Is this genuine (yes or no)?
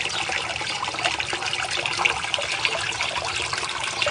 yes